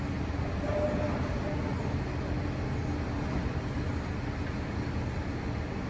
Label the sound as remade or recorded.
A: recorded